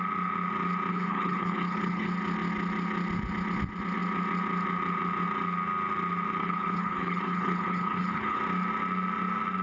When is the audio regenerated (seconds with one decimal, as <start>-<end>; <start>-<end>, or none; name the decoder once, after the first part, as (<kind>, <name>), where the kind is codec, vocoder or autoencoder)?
0.9-2.1 (codec, HILCodec); 6.4-8.4